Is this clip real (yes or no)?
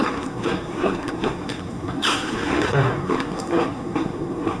no